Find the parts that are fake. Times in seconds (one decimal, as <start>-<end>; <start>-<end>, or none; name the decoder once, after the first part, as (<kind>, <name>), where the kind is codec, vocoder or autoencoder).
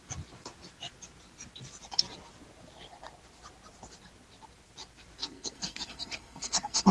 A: 5.2-6.9 (codec, SNAC)